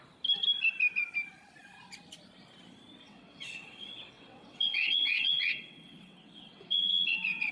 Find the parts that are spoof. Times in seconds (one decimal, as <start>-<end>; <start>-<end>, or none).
3.0-7.5